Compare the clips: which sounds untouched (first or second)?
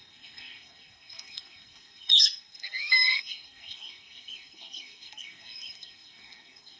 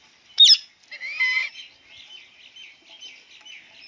second